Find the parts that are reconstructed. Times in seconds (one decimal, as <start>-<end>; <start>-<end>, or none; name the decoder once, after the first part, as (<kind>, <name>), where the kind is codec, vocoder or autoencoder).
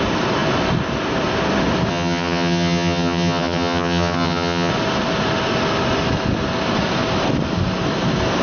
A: 1.9-4.7 (vocoder, HiFi-GAN)